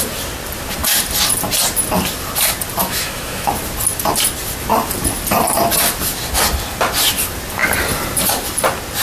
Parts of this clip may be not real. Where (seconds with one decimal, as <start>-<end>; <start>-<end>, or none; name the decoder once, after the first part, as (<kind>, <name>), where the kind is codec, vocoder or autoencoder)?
2.8-3.5 (autoencoder, DAC-VAE)